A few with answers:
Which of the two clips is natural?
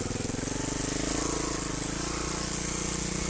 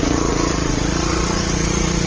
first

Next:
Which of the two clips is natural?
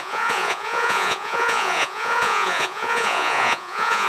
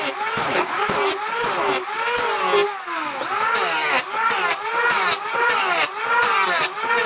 second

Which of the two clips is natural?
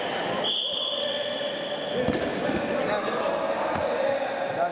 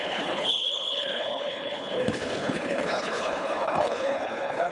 first